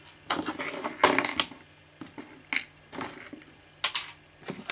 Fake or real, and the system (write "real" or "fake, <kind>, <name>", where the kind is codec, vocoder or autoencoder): real